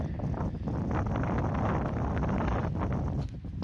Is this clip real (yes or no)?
yes